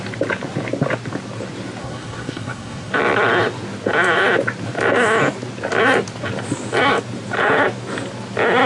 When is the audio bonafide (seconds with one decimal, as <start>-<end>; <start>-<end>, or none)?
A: 0.0-1.8; 2.9-8.7